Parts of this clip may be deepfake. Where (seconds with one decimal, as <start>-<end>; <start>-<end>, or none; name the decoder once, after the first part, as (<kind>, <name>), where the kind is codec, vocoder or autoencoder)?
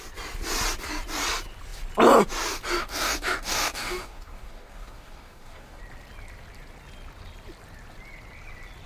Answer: 2.8-5.8 (codec, DAC)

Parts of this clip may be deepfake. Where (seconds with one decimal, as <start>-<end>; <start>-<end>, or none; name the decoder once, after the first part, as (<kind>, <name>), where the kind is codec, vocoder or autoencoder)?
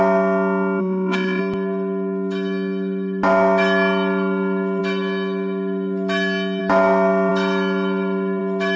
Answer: 0.8-1.4 (vocoder, Vocos)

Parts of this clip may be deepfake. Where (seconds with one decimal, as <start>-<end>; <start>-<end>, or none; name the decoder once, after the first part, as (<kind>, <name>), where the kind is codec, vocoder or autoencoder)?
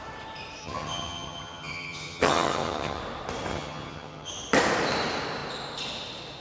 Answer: 0.6-3.0 (vocoder, HiFi-GAN); 3.5-4.3